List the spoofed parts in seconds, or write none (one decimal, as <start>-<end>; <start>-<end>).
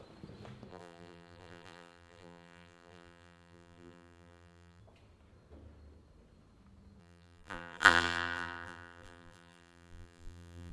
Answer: 0.7-4.8; 7.0-10.7